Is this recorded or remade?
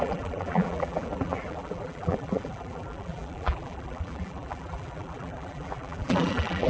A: remade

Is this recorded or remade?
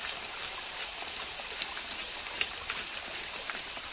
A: recorded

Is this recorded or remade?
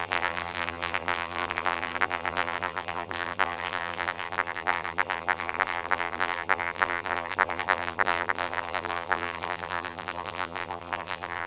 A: remade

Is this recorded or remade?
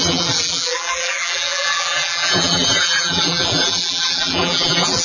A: remade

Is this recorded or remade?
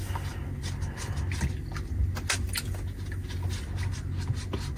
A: recorded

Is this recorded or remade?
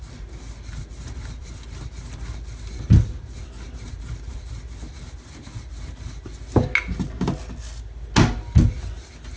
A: recorded